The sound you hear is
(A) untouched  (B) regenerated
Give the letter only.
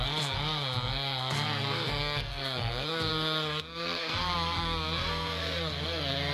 B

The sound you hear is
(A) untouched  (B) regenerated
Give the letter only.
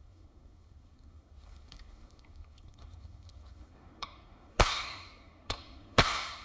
B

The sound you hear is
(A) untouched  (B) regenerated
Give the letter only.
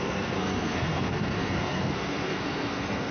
B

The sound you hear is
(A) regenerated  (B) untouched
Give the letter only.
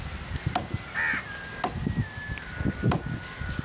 B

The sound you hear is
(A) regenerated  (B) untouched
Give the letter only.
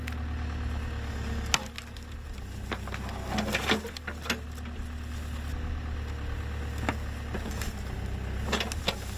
B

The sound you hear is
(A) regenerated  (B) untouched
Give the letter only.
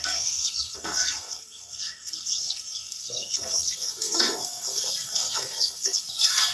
A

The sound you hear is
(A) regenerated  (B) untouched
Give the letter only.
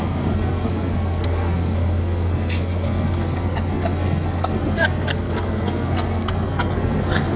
A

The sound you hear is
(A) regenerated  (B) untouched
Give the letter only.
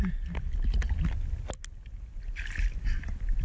B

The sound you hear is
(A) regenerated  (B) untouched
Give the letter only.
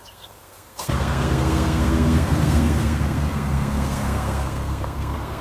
A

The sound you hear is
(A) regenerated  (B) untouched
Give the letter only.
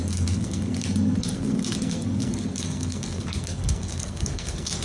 A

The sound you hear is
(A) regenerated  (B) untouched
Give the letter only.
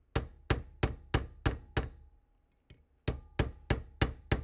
B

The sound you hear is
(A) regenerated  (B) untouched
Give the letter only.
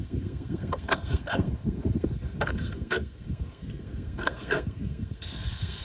A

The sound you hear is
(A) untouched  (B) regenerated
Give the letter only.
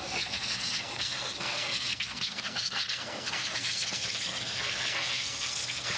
B